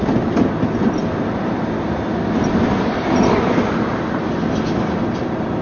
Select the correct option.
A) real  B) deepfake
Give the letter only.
A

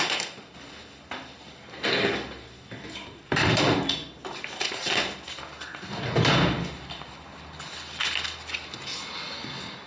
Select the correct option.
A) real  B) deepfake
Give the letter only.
A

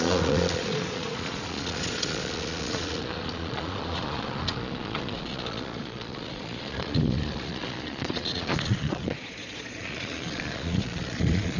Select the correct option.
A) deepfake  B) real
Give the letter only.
A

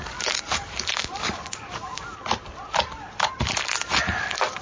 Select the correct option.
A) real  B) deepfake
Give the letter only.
A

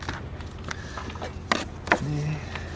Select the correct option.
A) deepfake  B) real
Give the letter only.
B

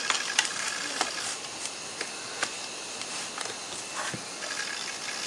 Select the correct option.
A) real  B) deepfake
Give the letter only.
A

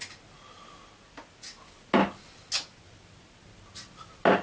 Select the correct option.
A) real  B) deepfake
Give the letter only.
A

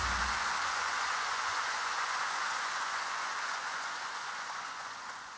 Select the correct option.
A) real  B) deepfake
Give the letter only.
B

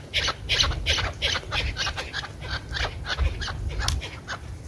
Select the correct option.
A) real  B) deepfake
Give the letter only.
A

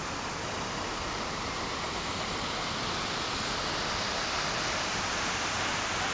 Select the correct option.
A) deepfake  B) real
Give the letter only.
B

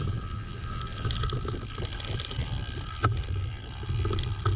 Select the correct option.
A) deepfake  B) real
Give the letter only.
B